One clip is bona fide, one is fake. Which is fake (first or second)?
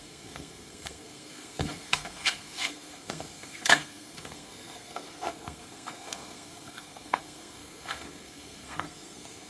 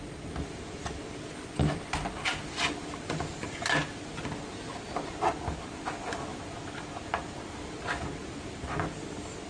first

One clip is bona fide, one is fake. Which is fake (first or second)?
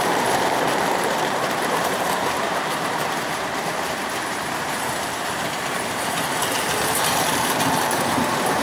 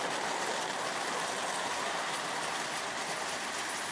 first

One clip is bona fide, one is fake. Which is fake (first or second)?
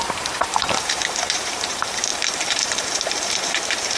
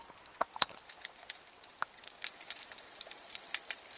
first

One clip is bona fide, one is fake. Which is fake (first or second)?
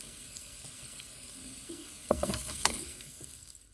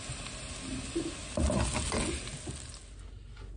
first